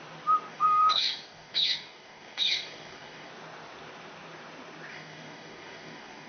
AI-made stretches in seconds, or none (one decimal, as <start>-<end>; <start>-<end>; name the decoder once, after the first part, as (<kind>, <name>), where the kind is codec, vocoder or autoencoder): 0.5-3.3 (codec, DAC); 4.9-6.3